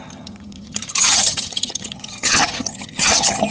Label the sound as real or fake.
fake